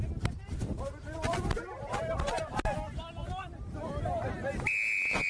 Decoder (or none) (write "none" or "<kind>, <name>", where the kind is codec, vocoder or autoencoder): none